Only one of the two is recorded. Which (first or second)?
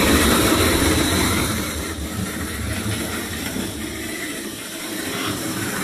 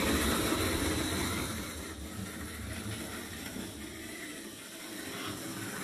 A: second